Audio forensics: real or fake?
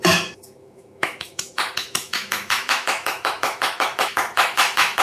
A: fake